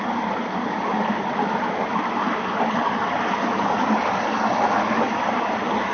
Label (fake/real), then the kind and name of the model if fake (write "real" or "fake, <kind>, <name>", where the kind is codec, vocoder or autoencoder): real